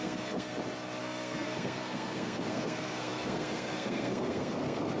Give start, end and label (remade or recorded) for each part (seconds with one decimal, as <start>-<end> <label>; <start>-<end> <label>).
0.0-0.5 remade; 0.5-1.0 recorded; 1.0-5.0 remade